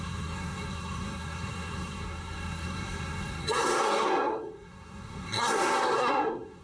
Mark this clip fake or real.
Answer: fake